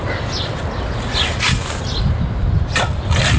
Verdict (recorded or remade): recorded